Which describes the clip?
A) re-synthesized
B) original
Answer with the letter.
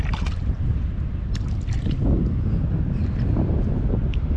B